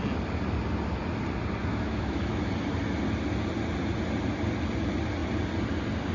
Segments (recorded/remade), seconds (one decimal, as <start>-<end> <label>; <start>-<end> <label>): 0.0-1.6 recorded; 1.6-2.5 remade; 2.5-6.1 recorded